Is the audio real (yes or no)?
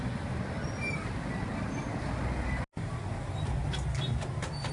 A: yes